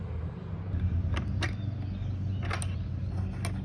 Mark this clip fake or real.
real